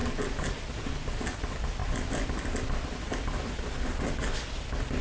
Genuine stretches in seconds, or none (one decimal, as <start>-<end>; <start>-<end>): 0.0-5.0